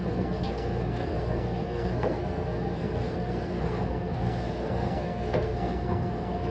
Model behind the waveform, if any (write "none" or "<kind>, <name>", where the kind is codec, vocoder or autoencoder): codec, SNAC